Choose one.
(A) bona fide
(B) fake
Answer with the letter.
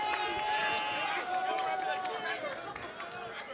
A